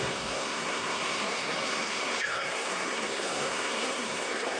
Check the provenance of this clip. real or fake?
fake